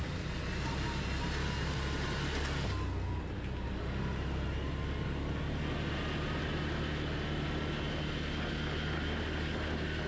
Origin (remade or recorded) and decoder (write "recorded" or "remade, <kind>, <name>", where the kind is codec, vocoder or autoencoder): recorded